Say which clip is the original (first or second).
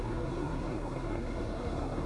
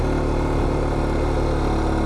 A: second